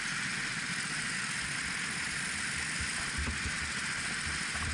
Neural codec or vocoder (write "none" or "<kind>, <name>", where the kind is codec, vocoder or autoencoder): none